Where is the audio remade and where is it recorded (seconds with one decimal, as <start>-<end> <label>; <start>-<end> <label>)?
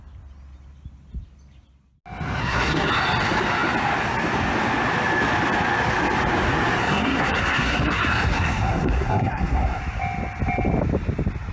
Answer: 0.0-2.4 recorded; 2.4-2.9 remade; 2.9-6.8 recorded; 6.8-9.8 remade; 9.8-11.5 recorded